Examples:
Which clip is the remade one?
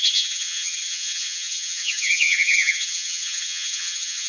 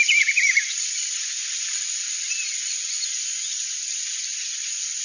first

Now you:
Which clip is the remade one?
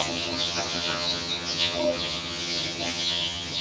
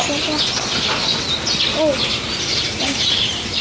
first